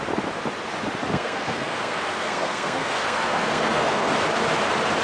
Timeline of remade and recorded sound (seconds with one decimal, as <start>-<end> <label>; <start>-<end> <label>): 0.0-1.1 recorded; 1.1-4.1 remade; 4.1-5.0 recorded